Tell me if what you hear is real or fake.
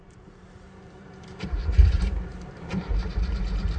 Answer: fake